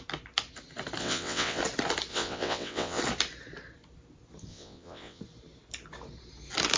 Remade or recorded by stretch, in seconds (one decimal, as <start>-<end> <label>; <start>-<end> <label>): 0.0-1.0 recorded; 1.0-1.6 remade; 1.6-2.1 recorded; 2.1-3.0 remade; 3.0-4.5 recorded; 4.5-5.2 remade; 5.2-6.8 recorded